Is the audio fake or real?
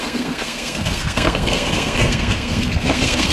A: fake